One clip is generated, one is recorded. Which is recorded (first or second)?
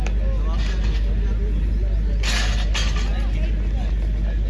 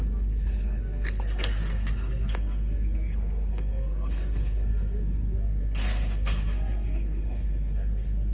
first